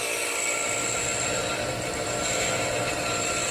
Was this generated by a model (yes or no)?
yes